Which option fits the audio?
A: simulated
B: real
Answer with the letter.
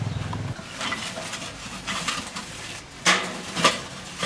A